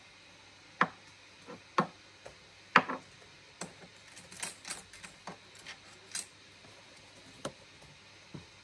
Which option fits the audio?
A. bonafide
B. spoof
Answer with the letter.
A